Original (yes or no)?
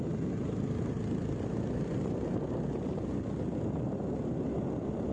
yes